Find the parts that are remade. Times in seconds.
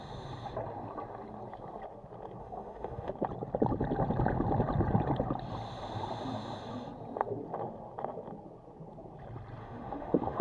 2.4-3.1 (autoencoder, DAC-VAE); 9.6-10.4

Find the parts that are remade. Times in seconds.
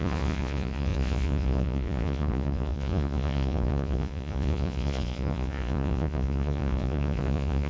0.0-7.7 (vocoder, Vocos)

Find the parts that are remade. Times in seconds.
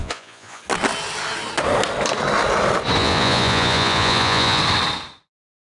0.0-0.6 (vocoder, Vocos); 3.0-4.6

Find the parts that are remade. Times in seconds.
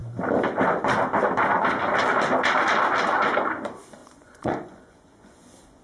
4.0-5.8 (vocoder, Vocos)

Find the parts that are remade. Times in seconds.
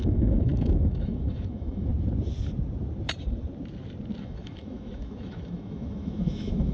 0.0-1.9 (autoencoder, DAC-VAE); 4.2-6.7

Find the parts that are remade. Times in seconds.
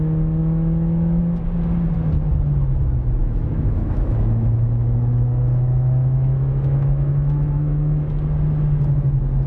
0.4-1.2 (autoencoder, DAC-VAE); 3.2-8.0